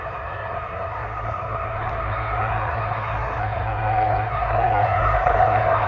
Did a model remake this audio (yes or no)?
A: yes